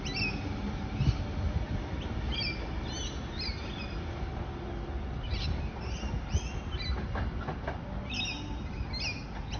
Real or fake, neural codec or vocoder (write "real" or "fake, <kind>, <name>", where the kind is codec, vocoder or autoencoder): real